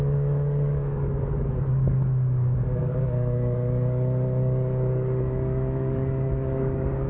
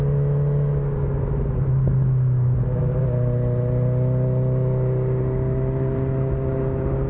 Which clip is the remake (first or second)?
first